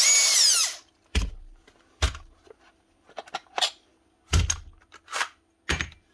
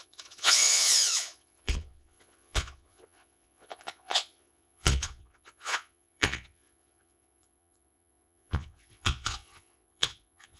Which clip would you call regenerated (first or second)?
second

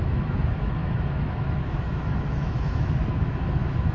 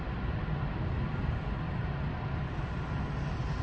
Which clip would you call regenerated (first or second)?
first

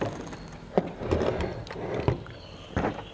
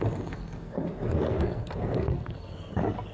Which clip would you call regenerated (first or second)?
second